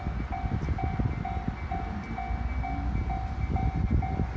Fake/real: real